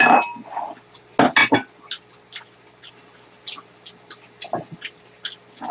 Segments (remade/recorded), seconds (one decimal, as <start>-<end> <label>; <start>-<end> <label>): 0.0-5.7 recorded